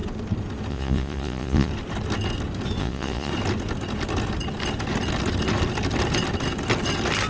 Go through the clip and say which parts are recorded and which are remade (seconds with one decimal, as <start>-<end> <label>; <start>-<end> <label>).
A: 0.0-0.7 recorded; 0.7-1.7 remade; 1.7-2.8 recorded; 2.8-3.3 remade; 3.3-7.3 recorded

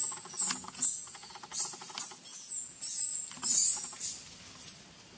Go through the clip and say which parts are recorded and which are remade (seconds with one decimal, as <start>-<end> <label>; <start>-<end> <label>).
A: 0.0-1.3 remade; 1.3-2.3 recorded; 2.3-3.0 remade; 3.0-5.2 recorded

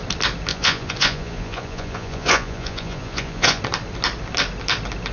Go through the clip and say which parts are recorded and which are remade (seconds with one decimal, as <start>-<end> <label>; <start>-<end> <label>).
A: 0.0-0.5 recorded; 0.5-3.6 remade; 3.6-5.1 recorded

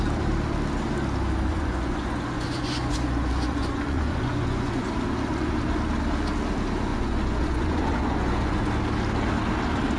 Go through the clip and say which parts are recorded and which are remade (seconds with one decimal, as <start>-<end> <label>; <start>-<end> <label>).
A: 0.0-1.5 recorded; 1.5-4.9 remade; 4.9-6.9 recorded; 6.9-8.7 remade; 8.7-10.0 recorded

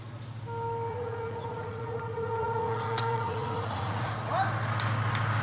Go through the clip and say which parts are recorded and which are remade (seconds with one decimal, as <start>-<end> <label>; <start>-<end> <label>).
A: 0.0-0.9 recorded; 0.9-4.1 remade; 4.1-5.4 recorded

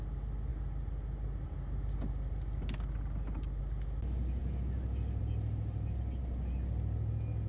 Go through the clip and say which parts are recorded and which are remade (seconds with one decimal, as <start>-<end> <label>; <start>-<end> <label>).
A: 0.0-7.5 recorded

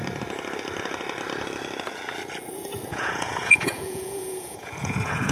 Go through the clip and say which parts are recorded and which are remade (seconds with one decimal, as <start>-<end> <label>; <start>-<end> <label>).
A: 0.0-2.9 recorded; 2.9-5.3 remade

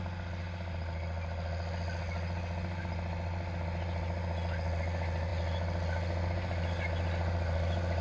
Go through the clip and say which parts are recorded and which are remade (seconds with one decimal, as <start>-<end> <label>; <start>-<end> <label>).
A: 0.0-8.0 recorded